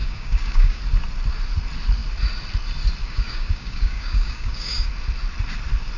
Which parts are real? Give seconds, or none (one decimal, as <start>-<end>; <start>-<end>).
0.8-3.0; 4.9-6.0